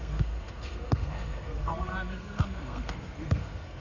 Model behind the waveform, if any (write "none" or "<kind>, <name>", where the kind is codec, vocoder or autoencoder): codec, SNAC